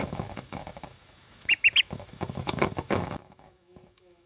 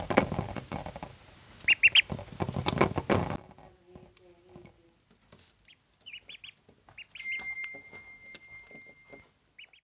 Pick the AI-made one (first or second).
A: first